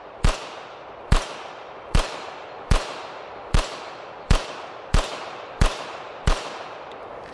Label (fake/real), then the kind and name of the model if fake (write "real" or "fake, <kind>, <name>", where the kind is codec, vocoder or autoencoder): fake, vocoder, BigVGAN v2